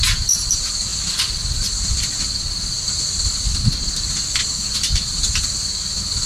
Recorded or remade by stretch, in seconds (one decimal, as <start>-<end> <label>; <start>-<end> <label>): 0.0-6.3 recorded